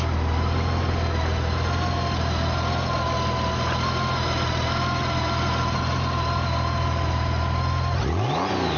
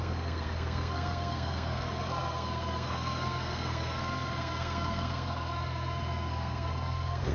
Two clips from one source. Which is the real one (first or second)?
first